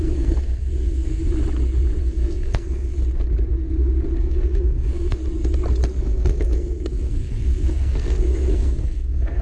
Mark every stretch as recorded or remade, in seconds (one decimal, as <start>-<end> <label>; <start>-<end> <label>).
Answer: 0.0-1.2 remade; 1.2-2.0 recorded; 2.0-2.9 remade; 2.9-4.2 recorded; 4.2-5.2 remade; 5.2-6.0 recorded; 6.0-9.4 remade